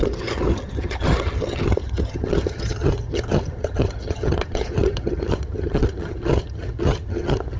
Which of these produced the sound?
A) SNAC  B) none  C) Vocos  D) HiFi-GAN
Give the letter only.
D